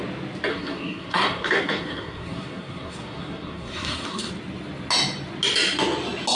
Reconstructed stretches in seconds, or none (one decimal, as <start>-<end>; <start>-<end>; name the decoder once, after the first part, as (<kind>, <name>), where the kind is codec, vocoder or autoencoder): 0.5-4.3 (codec, SNAC)